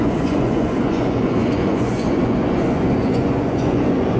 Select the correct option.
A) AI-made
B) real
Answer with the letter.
A